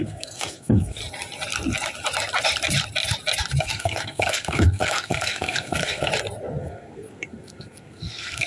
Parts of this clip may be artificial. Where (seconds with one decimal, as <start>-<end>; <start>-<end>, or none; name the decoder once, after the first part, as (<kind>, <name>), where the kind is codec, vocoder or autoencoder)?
0.0-1.0 (codec, SNAC); 3.6-6.1; 6.6-8.5